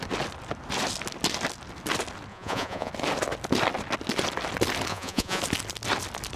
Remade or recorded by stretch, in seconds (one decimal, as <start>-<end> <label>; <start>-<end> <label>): 0.0-2.3 recorded; 2.3-2.9 remade; 2.9-4.9 recorded; 4.9-5.4 remade; 5.4-6.4 recorded